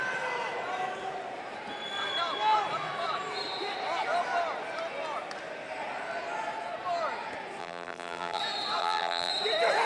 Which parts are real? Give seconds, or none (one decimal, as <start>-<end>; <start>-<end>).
0.0-7.6; 8.4-8.8; 9.3-9.9